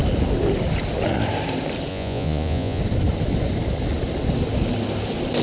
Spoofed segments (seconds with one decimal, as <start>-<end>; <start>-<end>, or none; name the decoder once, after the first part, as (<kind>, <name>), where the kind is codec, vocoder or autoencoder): 1.9-2.8 (vocoder, Vocos)